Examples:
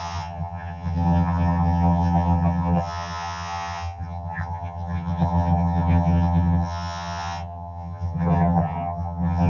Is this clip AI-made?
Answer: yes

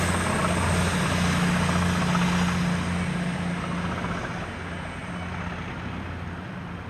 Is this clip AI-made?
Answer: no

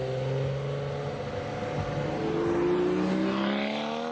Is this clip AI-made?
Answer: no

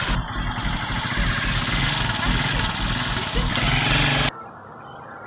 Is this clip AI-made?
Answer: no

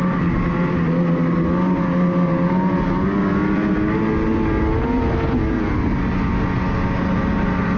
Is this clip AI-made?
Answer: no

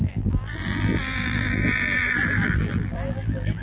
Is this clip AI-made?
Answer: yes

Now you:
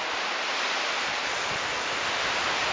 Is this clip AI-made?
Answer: no